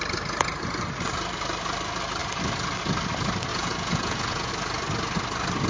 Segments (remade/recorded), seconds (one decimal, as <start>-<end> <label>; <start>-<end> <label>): 0.0-3.5 recorded; 3.5-4.5 remade; 4.5-5.7 recorded